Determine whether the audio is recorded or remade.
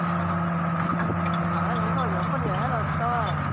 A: recorded